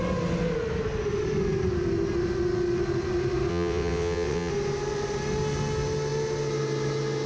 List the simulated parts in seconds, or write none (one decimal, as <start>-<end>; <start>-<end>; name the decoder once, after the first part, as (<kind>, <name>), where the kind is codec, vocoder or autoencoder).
3.5-4.5 (vocoder, WaveNeXt)